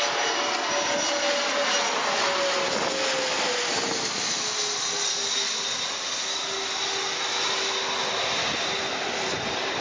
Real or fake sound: real